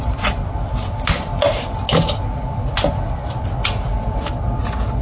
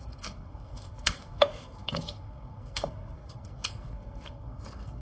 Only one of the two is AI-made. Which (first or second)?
second